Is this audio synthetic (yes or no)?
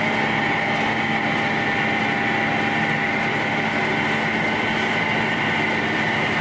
no